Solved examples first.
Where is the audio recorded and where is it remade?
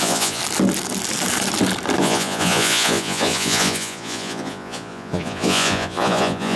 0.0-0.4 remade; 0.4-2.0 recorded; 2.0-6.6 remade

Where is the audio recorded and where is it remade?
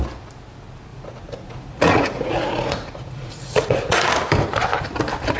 0.0-0.9 recorded; 0.9-4.1 remade; 4.1-5.4 recorded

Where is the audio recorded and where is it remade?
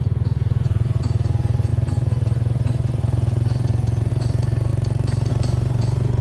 0.0-4.7 remade; 4.7-5.3 recorded; 5.3-6.2 remade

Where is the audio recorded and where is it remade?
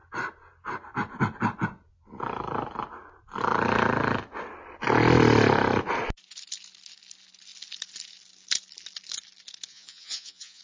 0.0-9.7 recorded; 9.7-10.6 remade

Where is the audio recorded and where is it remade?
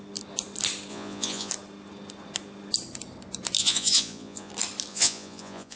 0.0-0.9 recorded; 0.9-1.5 remade; 1.5-3.6 recorded; 3.6-4.5 remade; 4.5-4.9 recorded; 4.9-5.8 remade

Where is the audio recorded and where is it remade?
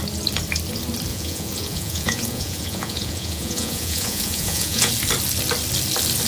0.0-1.1 recorded; 1.1-4.9 remade; 4.9-6.3 recorded